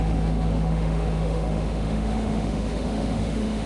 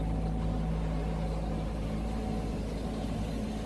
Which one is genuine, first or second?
second